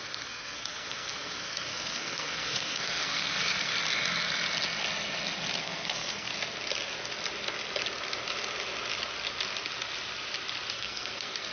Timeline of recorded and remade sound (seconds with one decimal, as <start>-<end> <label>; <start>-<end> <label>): 0.0-3.7 remade; 3.7-5.6 recorded; 5.6-6.3 remade; 6.3-10.7 recorded; 10.7-11.5 remade